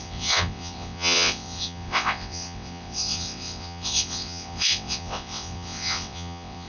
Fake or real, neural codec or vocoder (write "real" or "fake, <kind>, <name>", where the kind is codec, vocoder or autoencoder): fake, vocoder, WaveNeXt